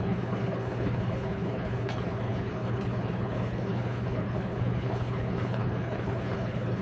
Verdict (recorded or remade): remade